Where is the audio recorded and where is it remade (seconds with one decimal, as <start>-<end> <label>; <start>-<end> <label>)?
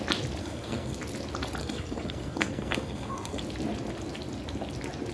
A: 0.0-0.4 recorded; 0.4-1.0 remade; 1.0-1.6 recorded; 1.6-3.4 remade; 3.4-5.1 recorded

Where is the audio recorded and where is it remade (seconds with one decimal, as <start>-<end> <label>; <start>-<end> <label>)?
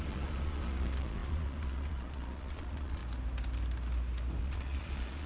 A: 0.0-3.0 remade; 3.0-4.4 recorded; 4.4-5.3 remade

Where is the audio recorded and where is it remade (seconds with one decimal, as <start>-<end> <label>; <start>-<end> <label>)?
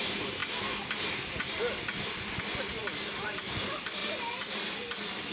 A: 0.0-0.4 remade; 0.4-2.4 recorded; 2.4-4.0 remade; 4.0-5.3 recorded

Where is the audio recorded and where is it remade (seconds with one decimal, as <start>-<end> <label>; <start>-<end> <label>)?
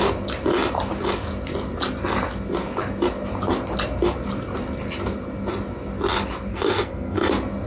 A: 0.0-6.5 recorded; 6.5-7.3 remade; 7.3-7.7 recorded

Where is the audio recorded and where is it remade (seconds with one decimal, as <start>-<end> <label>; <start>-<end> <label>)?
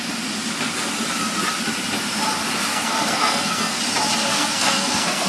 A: 0.0-2.7 recorded; 2.7-3.8 remade; 3.8-4.3 recorded; 4.3-5.3 remade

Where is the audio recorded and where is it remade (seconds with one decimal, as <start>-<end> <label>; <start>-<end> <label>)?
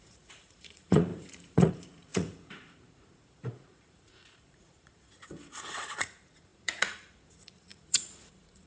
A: 0.0-8.7 remade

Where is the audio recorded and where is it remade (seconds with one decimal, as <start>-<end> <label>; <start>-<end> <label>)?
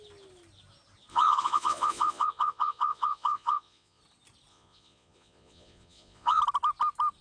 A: 0.0-1.1 recorded; 1.1-4.0 remade; 4.0-4.5 recorded; 4.5-6.4 remade; 6.4-7.2 recorded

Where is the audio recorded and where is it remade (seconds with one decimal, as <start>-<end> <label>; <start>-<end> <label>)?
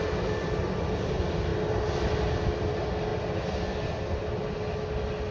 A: 0.0-5.3 recorded